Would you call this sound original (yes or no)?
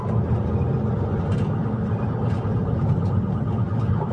yes